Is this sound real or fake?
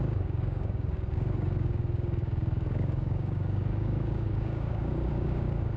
fake